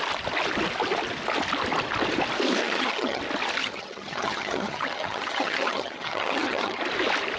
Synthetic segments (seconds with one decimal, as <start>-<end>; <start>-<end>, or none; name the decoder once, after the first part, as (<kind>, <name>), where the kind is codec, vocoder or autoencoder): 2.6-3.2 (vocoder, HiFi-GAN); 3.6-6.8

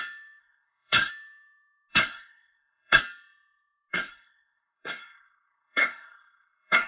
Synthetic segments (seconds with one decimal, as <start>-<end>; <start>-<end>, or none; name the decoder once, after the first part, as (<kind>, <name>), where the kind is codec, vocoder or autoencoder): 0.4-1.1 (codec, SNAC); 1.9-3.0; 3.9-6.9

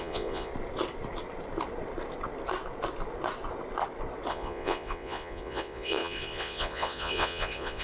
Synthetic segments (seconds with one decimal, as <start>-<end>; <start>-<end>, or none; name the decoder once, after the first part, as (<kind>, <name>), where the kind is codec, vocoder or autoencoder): 0.0-0.5 (vocoder, Vocos); 4.3-7.8

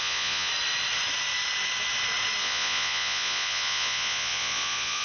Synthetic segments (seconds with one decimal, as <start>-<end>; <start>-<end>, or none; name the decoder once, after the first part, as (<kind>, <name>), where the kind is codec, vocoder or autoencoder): 0.0-0.5 (vocoder, Vocos); 2.4-5.0

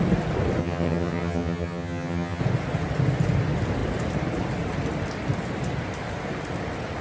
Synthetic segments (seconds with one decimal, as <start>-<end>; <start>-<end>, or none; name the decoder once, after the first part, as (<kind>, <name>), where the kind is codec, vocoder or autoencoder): 0.6-2.4 (vocoder, HiFi-GAN)